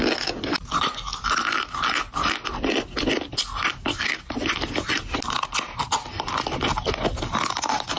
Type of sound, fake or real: real